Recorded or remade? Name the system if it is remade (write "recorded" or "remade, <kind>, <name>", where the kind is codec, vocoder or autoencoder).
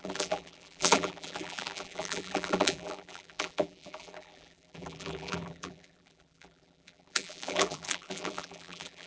remade, vocoder, BigVGAN v2